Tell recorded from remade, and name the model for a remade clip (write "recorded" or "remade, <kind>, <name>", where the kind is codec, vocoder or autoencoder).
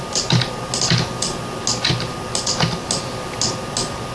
recorded